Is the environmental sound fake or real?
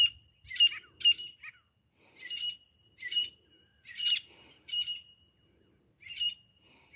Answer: real